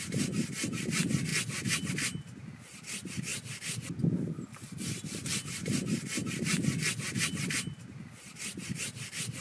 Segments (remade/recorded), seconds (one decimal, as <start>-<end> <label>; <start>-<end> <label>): 0.0-9.4 recorded